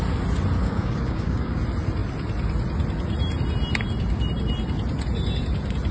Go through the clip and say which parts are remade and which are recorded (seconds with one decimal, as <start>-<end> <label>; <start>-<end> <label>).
0.0-0.6 recorded; 0.6-1.6 remade; 1.6-5.9 recorded